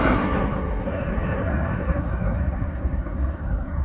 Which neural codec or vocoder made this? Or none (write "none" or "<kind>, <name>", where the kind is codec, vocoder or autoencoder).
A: codec, SNAC